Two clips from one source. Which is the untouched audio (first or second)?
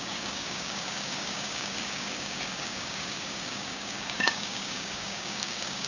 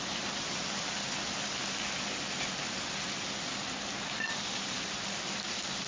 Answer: second